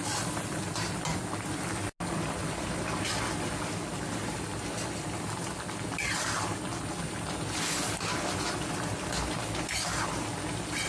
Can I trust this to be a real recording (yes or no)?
yes